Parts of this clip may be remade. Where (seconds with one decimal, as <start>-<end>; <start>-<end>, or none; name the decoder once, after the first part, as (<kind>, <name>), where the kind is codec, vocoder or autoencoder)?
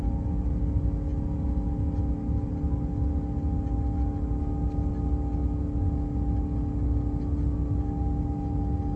none